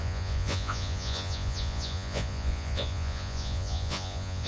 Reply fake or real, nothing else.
fake